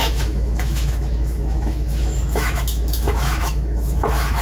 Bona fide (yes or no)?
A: no